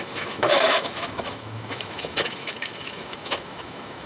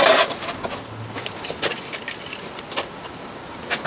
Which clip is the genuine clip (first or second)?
second